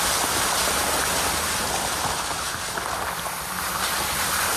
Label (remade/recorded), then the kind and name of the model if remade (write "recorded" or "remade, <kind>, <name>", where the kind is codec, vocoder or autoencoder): recorded